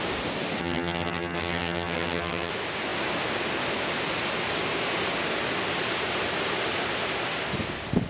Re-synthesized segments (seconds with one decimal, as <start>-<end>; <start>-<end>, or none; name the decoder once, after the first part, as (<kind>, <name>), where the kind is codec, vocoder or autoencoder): 0.6-2.5 (vocoder, HiFi-GAN)